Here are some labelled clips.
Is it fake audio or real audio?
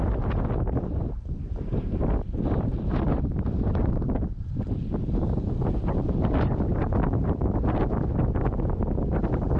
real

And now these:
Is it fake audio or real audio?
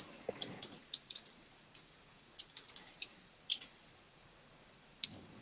fake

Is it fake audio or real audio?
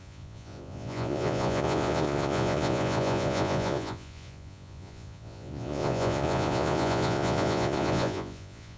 fake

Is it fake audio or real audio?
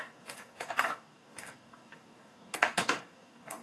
fake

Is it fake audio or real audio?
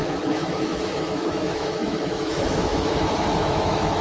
fake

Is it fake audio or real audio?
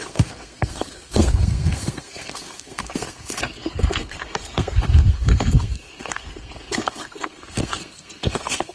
fake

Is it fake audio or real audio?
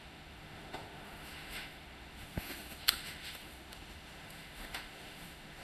fake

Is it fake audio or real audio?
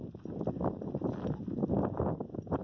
real